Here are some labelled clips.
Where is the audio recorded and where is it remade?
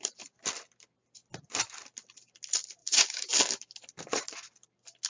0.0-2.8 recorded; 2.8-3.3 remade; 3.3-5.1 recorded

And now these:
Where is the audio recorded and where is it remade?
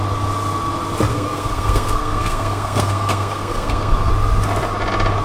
0.0-1.1 recorded; 1.1-4.1 remade; 4.1-5.2 recorded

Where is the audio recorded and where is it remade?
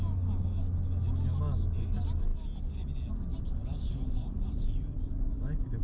0.0-5.8 recorded